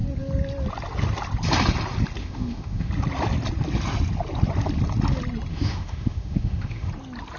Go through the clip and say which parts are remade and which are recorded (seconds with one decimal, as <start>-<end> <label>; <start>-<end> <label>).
0.0-2.2 recorded; 2.2-2.9 remade; 2.9-5.5 recorded; 5.5-6.9 remade; 6.9-7.4 recorded